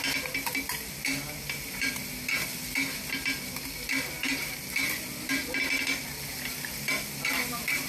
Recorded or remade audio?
recorded